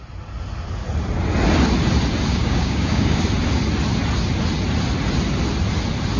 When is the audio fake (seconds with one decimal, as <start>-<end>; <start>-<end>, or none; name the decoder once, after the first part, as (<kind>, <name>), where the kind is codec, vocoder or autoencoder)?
2.3-3.2 (codec, DAC)